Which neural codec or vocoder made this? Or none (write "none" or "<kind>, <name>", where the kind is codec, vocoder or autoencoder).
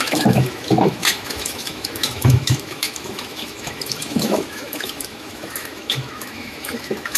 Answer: autoencoder, DAC-VAE